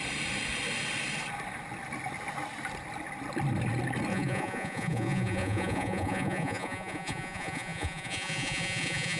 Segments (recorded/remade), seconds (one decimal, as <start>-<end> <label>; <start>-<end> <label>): 0.0-4.1 recorded; 4.1-9.2 remade

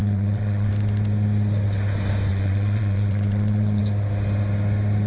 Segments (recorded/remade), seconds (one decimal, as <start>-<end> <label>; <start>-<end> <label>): 0.0-0.7 remade; 0.7-2.3 recorded; 2.3-3.8 remade; 3.8-5.1 recorded

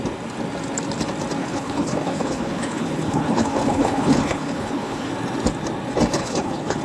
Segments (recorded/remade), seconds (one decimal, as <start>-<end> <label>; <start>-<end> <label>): 0.0-1.4 recorded; 1.4-5.1 remade; 5.1-6.2 recorded; 6.2-6.8 remade

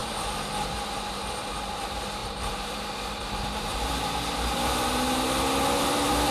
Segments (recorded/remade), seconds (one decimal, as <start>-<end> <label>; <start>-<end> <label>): 0.0-1.7 recorded; 1.7-2.2 remade; 2.2-5.7 recorded; 5.7-6.3 remade